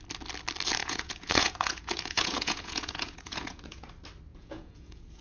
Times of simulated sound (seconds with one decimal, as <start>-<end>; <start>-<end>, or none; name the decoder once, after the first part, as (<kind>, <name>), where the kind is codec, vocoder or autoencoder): 0.8-3.9 (vocoder, Vocos); 4.3-5.2